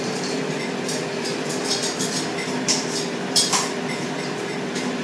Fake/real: fake